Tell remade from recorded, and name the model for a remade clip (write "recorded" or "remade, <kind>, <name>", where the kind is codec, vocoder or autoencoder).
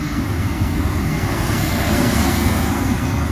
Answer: remade, codec, SNAC